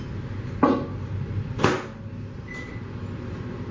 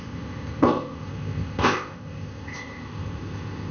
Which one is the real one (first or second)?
first